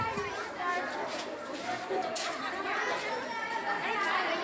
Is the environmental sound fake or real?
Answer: real